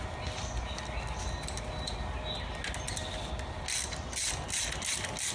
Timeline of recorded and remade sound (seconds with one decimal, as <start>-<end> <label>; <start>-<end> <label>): 0.0-5.3 recorded